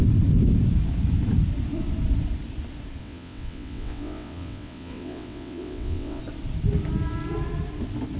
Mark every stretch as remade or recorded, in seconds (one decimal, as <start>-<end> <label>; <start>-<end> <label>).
0.0-3.0 recorded; 3.0-6.2 remade; 6.2-8.2 recorded